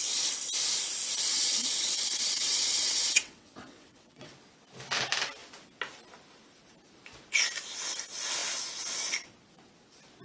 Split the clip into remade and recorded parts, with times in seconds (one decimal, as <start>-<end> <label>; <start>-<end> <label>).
0.0-1.3 recorded; 1.3-4.3 remade; 4.3-10.2 recorded

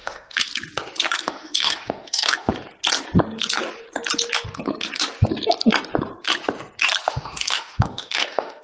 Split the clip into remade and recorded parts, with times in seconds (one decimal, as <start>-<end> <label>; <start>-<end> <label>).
0.0-0.5 remade; 0.5-1.2 recorded; 1.2-2.5 remade; 2.5-7.1 recorded; 7.1-8.6 remade

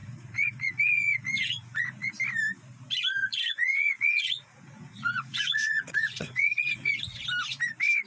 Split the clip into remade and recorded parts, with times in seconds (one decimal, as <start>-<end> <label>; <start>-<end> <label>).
0.0-2.1 remade; 2.1-3.2 recorded; 3.2-7.2 remade; 7.2-8.1 recorded

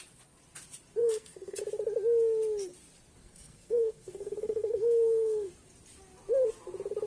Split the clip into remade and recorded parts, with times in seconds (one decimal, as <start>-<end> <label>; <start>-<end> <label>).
0.0-1.0 recorded; 1.0-1.6 remade; 1.6-3.2 recorded; 3.2-5.5 remade; 5.5-7.1 recorded

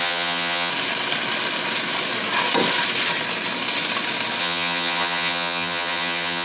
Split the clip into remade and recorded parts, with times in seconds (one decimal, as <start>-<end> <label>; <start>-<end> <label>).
0.0-0.7 remade; 0.7-4.4 recorded; 4.4-6.4 remade

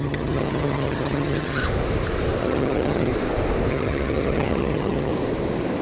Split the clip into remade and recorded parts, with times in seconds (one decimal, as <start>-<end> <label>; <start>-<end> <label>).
0.0-1.6 remade; 1.6-2.4 recorded; 2.4-3.1 remade; 3.1-3.7 recorded; 3.7-5.1 remade; 5.1-5.8 recorded

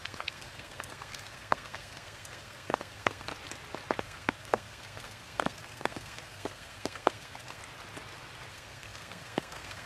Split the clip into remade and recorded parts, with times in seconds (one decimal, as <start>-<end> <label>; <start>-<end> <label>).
0.0-3.3 remade; 3.3-4.0 recorded; 4.0-7.6 remade; 7.6-8.5 recorded; 8.5-9.9 remade